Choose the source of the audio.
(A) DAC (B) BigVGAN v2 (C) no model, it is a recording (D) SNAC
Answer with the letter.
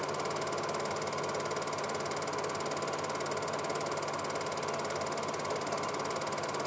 C